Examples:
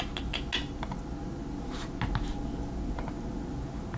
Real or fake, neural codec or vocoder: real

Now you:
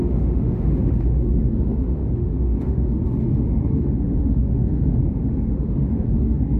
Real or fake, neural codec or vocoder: fake, autoencoder, DAC-VAE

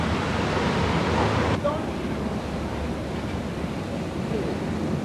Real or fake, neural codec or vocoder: real